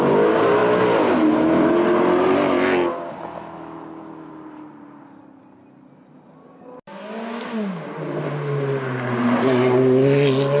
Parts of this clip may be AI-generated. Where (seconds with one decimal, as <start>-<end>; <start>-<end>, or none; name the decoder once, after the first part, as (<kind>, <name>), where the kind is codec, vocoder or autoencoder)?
none